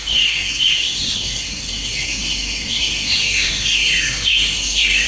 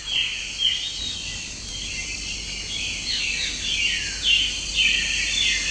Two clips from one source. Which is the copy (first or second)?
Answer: first